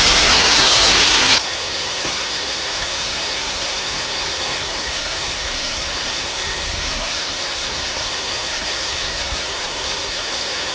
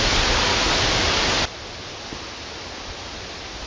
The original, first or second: second